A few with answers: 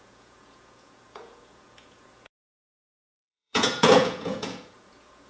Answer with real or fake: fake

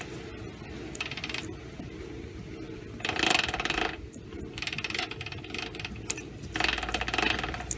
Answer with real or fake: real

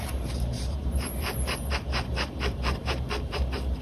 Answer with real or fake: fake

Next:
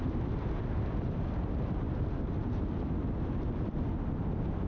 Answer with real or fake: real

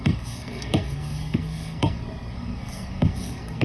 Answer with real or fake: fake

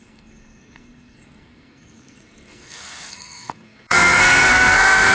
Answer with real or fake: fake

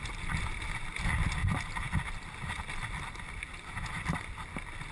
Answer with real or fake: real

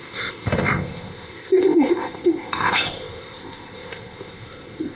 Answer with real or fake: fake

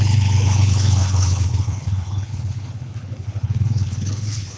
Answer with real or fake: fake